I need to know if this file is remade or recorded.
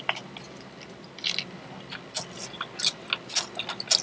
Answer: recorded